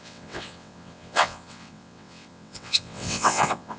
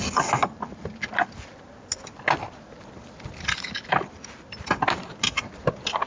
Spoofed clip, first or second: first